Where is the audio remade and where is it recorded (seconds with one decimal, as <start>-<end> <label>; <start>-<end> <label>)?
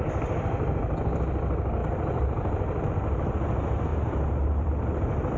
0.0-1.8 recorded; 1.8-2.9 remade; 2.9-3.9 recorded; 3.9-4.7 remade; 4.7-5.4 recorded